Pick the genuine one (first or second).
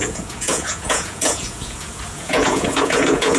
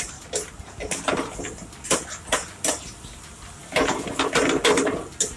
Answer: second